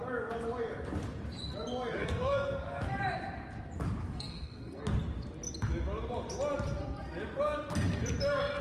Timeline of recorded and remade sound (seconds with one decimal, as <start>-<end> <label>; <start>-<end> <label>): 0.0-2.0 recorded; 2.0-3.0 remade; 3.0-4.0 recorded; 4.0-4.8 remade; 4.8-8.6 recorded